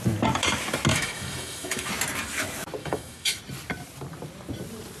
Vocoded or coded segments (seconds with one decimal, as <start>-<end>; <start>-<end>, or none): 0.9-1.9; 2.8-3.4